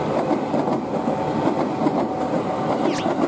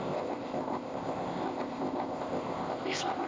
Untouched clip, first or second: first